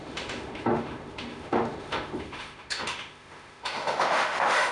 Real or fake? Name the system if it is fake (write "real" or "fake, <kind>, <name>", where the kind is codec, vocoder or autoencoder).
fake, autoencoder, DAC-VAE